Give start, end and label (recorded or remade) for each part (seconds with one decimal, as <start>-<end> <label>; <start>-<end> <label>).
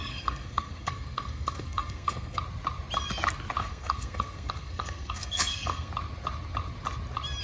0.0-2.4 remade; 2.4-3.6 recorded; 3.6-5.9 remade; 5.9-7.4 recorded